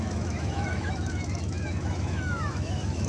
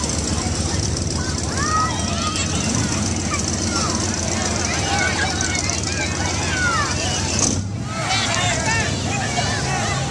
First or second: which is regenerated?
first